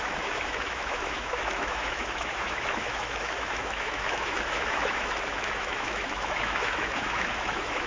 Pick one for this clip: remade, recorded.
remade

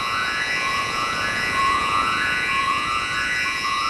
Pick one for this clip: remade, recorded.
remade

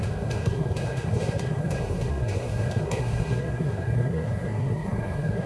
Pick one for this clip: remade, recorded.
remade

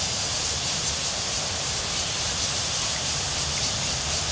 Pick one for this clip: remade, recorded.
remade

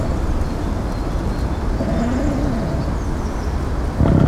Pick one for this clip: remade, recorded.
recorded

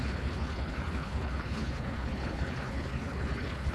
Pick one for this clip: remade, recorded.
remade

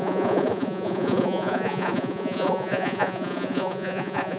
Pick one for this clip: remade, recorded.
remade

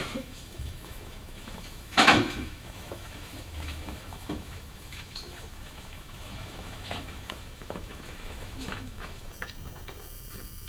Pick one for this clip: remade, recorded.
remade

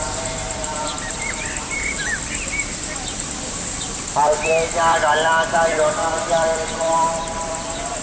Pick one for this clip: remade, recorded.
remade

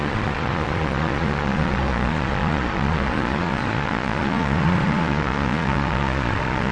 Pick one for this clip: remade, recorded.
remade